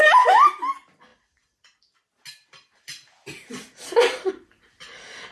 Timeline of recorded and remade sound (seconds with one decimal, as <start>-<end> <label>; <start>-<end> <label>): 0.0-5.3 recorded